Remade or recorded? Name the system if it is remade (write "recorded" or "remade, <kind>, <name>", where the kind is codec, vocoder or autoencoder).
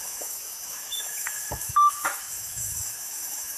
remade, autoencoder, DAC-VAE